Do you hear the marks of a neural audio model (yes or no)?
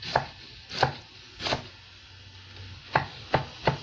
no